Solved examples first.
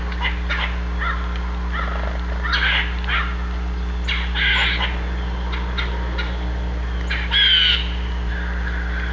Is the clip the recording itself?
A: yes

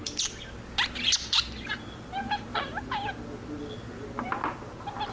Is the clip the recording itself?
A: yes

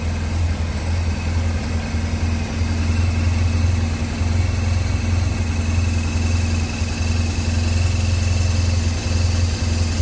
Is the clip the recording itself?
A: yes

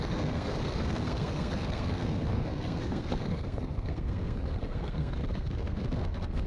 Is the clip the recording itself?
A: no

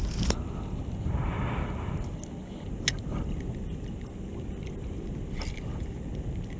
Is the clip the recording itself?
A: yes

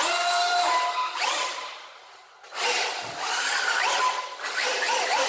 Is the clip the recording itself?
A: yes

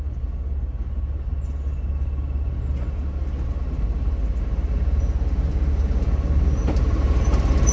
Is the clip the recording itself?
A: yes